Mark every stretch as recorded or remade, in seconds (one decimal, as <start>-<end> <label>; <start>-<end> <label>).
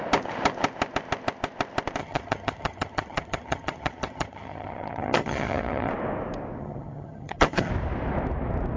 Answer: 0.0-2.0 recorded; 2.0-5.9 remade; 5.9-6.6 recorded; 6.6-7.7 remade; 7.7-8.8 recorded